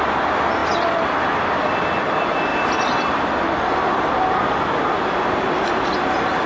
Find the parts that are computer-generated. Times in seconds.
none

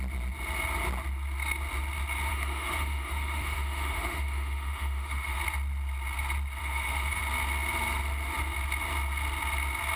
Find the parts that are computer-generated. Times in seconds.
2.3-5.4 (autoencoder, DAC-VAE); 6.6-7.2

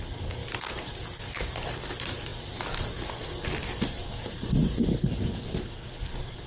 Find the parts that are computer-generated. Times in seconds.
none

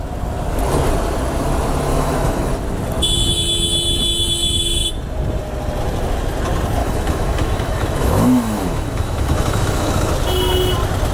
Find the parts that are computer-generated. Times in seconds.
1.9-2.5 (autoencoder, DAC-VAE); 6.8-10.1